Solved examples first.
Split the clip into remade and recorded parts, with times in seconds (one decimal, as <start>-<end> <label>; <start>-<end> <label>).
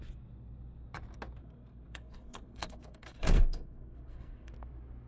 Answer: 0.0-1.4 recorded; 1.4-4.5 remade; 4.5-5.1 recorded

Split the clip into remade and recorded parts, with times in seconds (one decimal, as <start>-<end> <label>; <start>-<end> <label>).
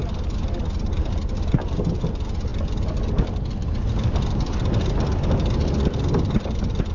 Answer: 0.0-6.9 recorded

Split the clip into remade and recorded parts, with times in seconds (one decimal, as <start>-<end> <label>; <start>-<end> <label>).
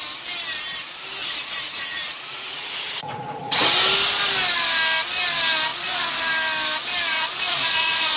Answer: 0.0-1.2 recorded; 1.2-3.6 remade; 3.6-5.7 recorded; 5.7-6.2 remade; 6.2-7.1 recorded; 7.1-8.2 remade